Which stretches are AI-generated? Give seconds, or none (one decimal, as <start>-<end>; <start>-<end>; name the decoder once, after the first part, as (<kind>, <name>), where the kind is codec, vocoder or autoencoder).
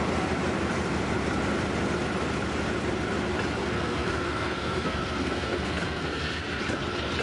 3.6-6.6 (codec, SNAC)